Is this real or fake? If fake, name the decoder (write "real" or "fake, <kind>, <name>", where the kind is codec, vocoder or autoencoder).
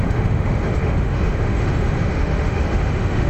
fake, autoencoder, DAC-VAE